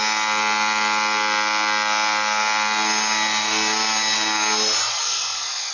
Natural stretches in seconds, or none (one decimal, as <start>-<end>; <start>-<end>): 0.0-4.9